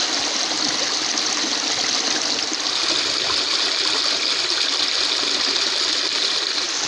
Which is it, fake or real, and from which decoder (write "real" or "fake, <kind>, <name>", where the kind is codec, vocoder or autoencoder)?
real